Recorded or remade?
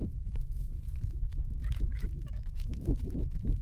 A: remade